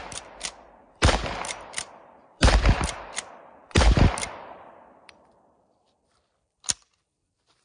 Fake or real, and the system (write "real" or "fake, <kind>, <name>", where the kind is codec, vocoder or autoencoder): fake, vocoder, BigVGAN v2